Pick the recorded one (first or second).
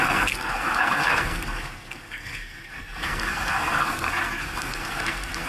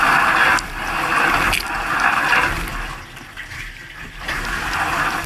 second